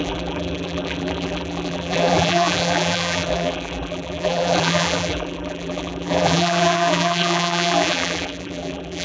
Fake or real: fake